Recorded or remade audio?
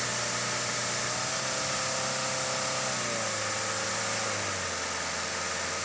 recorded